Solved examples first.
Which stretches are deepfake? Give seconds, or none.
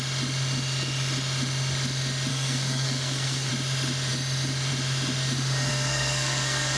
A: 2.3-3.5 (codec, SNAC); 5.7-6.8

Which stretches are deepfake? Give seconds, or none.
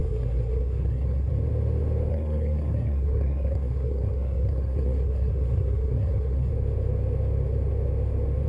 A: 0.0-1.3 (codec, SNAC); 2.1-6.5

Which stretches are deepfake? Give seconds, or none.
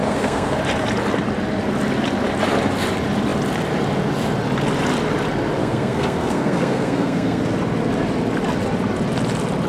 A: 0.0-0.6 (codec, SNAC); 5.6-7.4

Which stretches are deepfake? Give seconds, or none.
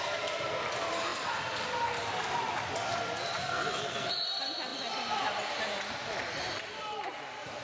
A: 3.4-4.1 (codec, SNAC)